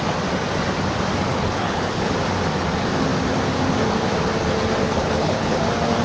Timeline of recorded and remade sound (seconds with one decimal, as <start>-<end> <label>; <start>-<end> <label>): 0.0-1.3 recorded; 1.3-2.1 remade; 2.1-4.8 recorded; 4.8-5.6 remade; 5.6-6.0 recorded